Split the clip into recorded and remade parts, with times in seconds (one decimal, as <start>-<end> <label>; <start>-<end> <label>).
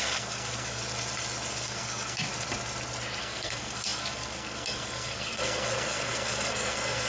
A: 0.0-0.8 remade; 0.8-1.5 recorded; 1.5-2.3 remade; 2.3-3.2 recorded; 3.2-7.1 remade